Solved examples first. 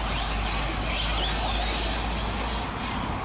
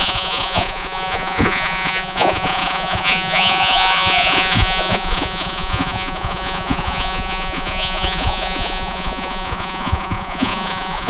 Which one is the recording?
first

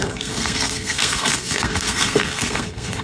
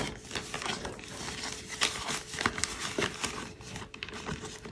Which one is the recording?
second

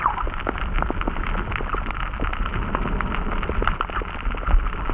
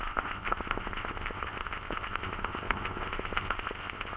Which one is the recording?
first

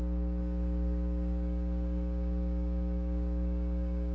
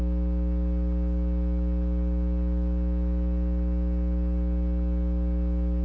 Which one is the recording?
second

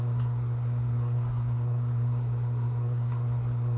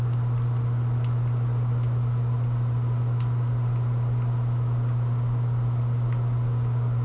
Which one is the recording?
second